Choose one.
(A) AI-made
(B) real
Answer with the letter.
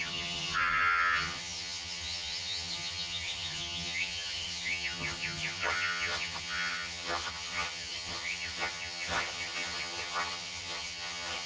A